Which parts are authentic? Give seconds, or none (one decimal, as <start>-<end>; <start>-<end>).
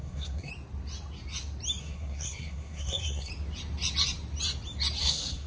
0.5-1.8; 3.3-5.0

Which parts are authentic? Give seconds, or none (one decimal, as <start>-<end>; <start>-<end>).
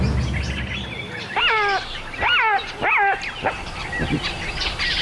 0.0-5.0